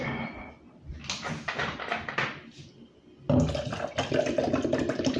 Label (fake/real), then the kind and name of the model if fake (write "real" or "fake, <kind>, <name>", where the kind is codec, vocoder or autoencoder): real